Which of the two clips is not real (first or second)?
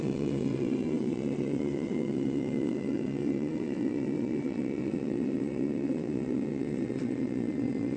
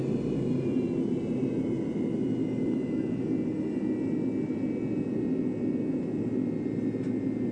first